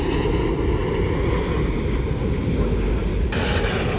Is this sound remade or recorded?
recorded